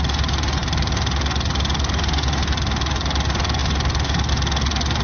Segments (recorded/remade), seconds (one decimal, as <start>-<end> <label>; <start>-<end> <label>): 0.0-5.0 recorded